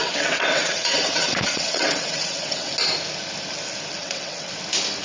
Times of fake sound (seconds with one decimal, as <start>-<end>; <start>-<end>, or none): 0.0-2.7; 4.0-4.5

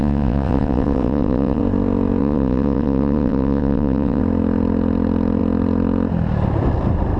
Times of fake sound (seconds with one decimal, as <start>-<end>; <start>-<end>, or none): 0.0-1.6; 2.2-4.2

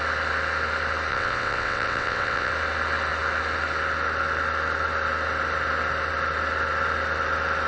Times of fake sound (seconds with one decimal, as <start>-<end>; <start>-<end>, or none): 1.1-2.5